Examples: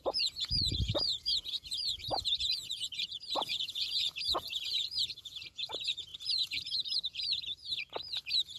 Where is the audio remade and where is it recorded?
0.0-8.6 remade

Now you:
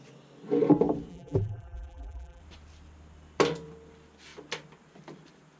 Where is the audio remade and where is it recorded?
0.0-1.1 recorded; 1.1-2.4 remade; 2.4-5.6 recorded

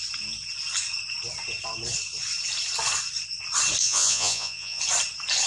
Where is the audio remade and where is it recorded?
0.0-3.8 recorded; 3.8-4.8 remade; 4.8-5.5 recorded

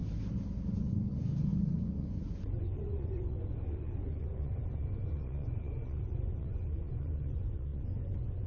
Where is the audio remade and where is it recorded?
0.0-0.8 recorded; 0.8-8.5 remade

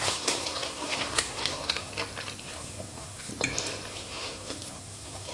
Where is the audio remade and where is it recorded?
0.0-1.9 remade; 1.9-2.4 recorded; 2.4-3.3 remade; 3.3-3.9 recorded; 3.9-5.3 remade